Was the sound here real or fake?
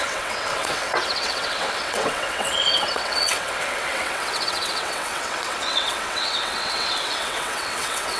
fake